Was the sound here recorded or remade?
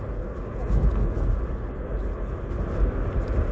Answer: recorded